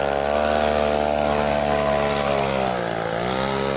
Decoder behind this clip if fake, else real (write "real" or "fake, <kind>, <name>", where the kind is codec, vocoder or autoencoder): real